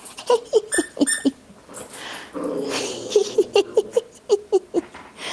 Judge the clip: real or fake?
real